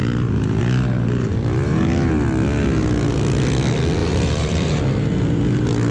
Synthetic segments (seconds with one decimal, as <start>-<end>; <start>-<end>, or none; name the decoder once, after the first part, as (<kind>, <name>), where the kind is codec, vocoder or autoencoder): 4.0-4.8 (vocoder, BigVGAN v2)